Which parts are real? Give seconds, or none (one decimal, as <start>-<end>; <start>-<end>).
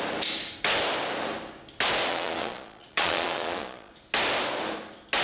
0.0-2.1; 3.9-5.2